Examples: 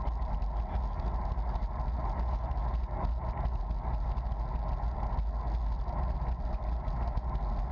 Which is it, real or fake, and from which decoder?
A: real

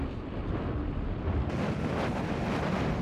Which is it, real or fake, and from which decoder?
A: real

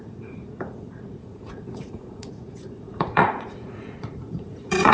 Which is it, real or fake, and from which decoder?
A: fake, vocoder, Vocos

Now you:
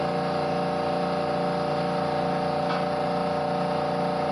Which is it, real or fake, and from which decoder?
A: real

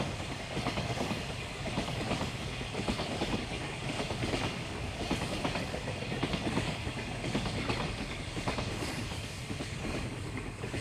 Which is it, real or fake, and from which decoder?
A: fake, codec, DAC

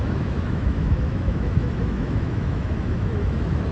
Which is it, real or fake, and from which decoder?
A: fake, autoencoder, DAC-VAE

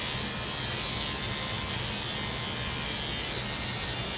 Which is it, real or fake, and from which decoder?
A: real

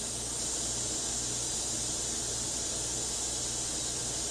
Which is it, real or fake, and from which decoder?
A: real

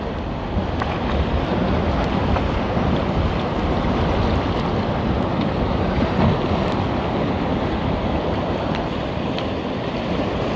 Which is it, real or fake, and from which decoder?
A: real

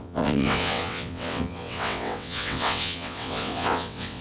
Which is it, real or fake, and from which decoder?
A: fake, vocoder, WaveNeXt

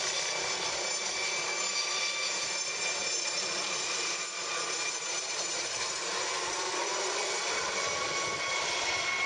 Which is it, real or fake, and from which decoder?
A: real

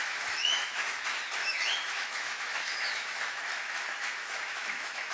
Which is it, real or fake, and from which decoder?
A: fake, autoencoder, DAC-VAE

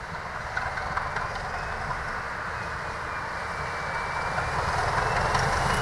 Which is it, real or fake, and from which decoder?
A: fake, vocoder, BigVGAN v2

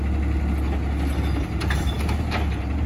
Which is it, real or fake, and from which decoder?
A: real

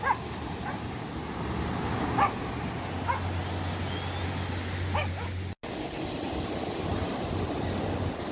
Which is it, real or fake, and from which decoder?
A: real